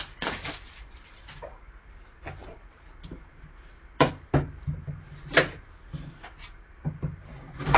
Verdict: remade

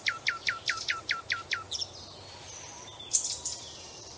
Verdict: recorded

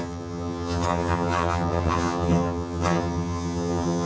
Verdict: remade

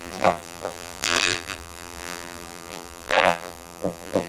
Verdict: remade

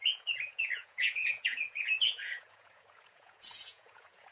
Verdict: remade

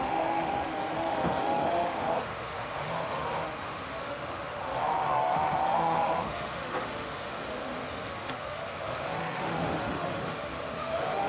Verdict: remade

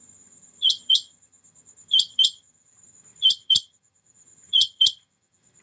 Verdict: remade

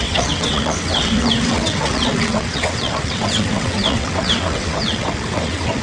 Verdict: remade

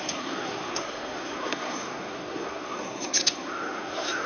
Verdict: remade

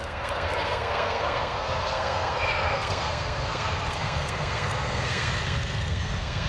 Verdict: remade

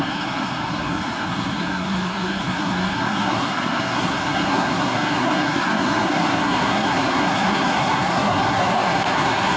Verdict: remade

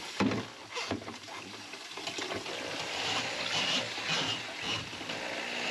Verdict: recorded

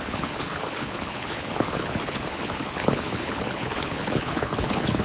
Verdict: remade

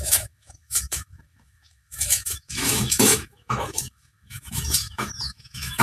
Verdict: remade